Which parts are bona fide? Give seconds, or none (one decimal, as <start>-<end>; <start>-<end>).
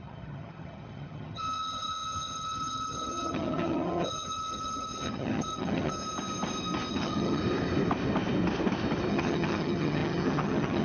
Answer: 6.0-6.9; 7.4-9.1